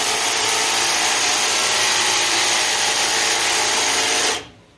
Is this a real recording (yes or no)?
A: no